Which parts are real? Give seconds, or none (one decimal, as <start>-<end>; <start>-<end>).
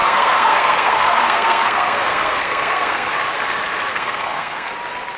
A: 3.1-3.9; 4.7-5.2